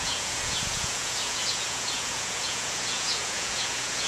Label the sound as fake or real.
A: fake